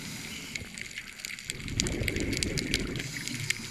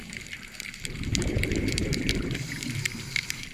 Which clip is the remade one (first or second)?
second